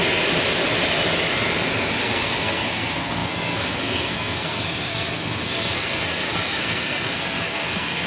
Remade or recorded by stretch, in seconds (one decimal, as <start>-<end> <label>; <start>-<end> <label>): 0.0-2.0 recorded; 2.0-8.1 remade